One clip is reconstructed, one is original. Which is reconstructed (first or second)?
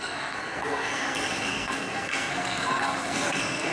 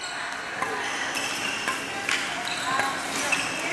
first